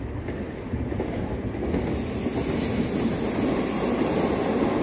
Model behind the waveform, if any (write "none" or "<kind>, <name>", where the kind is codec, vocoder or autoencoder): none